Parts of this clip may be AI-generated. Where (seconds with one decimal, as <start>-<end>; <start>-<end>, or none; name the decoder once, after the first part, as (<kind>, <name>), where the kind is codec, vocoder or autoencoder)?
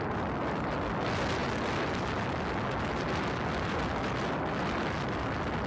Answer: none